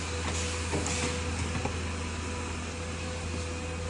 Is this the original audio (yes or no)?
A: yes